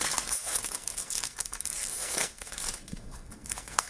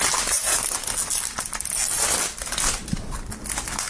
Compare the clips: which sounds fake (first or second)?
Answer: first